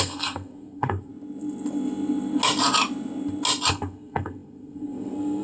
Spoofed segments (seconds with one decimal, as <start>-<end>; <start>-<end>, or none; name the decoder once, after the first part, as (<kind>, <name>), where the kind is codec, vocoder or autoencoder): 0.0-1.1 (codec, SNAC); 3.7-5.4